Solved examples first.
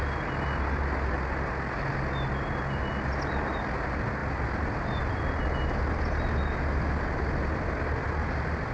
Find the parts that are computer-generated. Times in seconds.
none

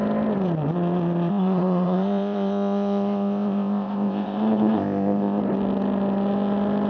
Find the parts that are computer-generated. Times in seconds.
1.3-5.4 (codec, ZipCodec)

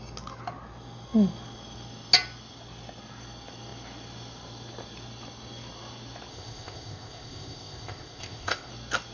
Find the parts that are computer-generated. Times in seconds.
6.3-8.7 (codec, ZipCodec)

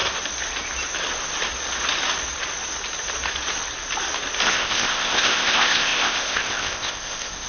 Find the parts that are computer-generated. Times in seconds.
4.5-7.5 (codec, ZipCodec)

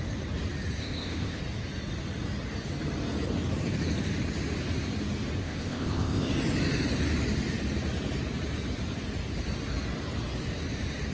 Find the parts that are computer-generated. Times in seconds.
0.8-1.4 (codec, ZipCodec); 5.4-6.3

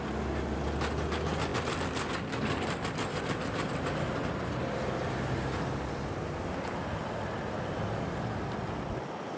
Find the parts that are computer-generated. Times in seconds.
none

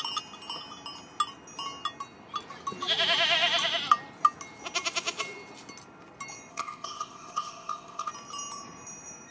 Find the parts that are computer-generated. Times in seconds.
6.5-8.1 (codec, ZipCodec)